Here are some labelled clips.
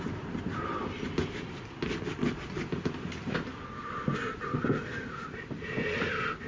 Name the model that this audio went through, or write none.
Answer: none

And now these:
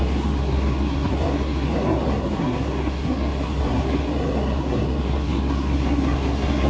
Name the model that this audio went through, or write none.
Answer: codec, SNAC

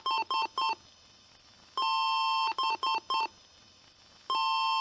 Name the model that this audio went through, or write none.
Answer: none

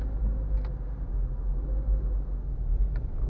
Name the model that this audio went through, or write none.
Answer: none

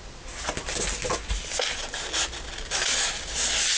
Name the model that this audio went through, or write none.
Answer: none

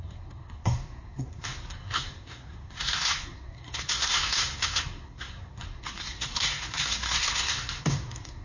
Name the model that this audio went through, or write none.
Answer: codec, SNAC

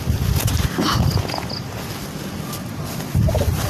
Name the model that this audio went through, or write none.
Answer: none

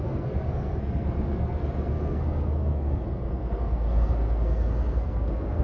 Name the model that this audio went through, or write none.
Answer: codec, SNAC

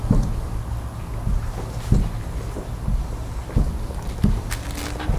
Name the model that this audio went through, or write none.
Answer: none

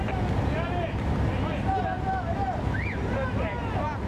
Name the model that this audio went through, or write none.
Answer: none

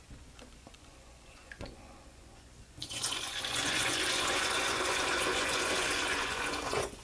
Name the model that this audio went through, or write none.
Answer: vocoder, Vocos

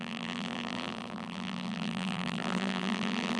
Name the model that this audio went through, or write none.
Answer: vocoder, BigVGAN v2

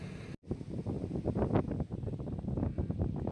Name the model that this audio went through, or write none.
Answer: none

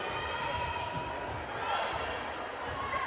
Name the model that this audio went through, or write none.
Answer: none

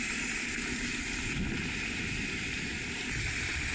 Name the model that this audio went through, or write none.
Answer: none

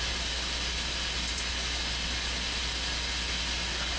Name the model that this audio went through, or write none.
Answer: none